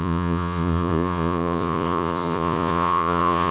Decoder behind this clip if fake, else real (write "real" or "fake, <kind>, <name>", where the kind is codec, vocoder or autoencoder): fake, vocoder, Vocos